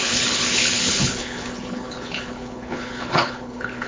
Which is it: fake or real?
fake